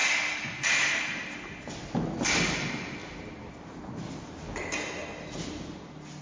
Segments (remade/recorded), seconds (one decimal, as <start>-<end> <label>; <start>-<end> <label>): 0.0-3.0 recorded; 3.0-3.8 remade; 3.8-6.2 recorded